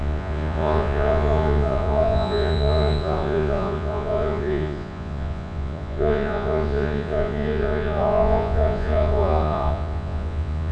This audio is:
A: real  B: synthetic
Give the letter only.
B